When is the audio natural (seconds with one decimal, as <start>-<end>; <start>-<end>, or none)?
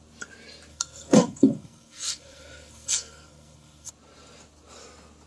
0.0-0.7; 3.9-5.3